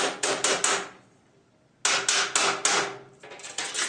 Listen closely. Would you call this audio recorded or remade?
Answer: recorded